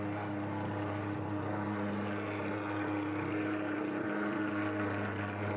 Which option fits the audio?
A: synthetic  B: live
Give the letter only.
B